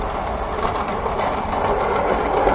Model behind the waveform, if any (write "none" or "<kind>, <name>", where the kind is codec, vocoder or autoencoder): none